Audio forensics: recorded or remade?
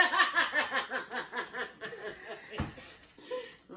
remade